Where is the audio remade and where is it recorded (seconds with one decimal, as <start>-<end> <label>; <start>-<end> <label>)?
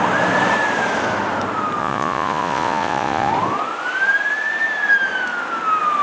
0.0-1.8 recorded; 1.8-3.3 remade; 3.3-6.0 recorded